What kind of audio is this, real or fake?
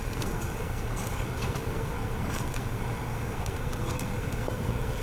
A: fake